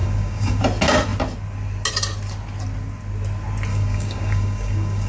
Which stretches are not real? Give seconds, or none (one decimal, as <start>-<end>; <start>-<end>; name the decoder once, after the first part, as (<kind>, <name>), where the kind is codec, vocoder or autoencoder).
0.0-0.6 (codec, DAC); 3.7-5.1